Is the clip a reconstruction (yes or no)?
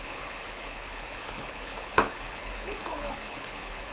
yes